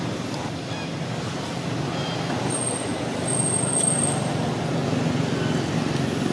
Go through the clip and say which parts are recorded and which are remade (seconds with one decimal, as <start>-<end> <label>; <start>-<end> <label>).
0.0-6.3 recorded